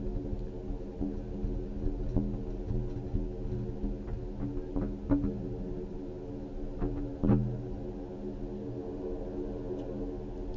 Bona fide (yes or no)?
yes